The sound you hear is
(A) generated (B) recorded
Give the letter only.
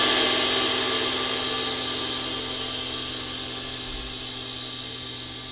B